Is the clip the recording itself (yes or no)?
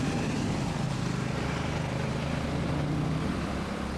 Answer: yes